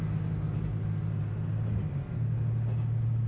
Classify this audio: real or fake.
real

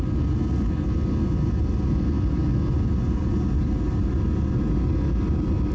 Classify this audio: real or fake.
real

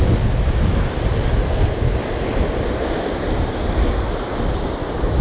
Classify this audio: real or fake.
real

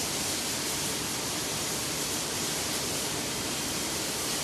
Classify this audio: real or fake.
fake